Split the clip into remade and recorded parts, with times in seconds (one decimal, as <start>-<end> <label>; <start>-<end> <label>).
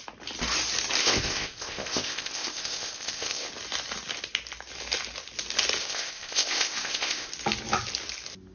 0.0-1.0 recorded; 1.0-3.5 remade; 3.5-5.8 recorded; 5.8-7.3 remade; 7.3-8.5 recorded